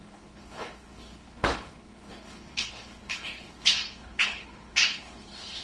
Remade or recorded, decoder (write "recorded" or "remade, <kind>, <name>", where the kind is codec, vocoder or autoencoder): remade, codec, HILCodec